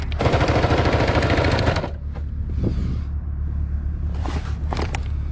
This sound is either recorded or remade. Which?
recorded